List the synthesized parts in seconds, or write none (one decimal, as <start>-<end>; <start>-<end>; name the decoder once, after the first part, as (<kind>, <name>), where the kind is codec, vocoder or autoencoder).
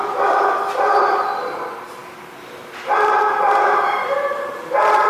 none